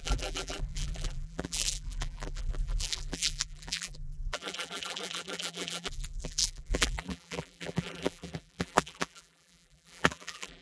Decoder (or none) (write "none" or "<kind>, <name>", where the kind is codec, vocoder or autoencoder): vocoder, BigVGAN v2